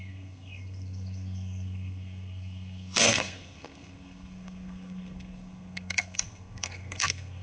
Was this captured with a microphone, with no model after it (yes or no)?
no